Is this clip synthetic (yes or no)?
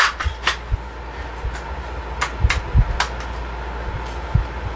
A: no